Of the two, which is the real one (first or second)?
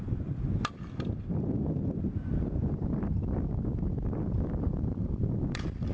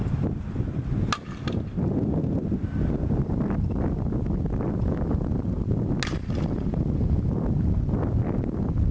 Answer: second